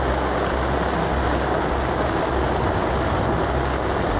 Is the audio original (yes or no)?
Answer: yes